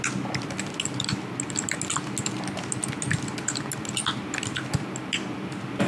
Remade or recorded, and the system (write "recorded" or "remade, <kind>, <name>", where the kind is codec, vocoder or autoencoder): recorded